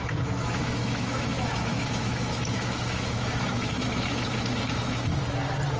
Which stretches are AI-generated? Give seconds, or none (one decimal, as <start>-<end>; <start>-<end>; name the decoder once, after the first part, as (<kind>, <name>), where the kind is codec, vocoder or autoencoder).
0.0-5.1 (autoencoder, DAC-VAE)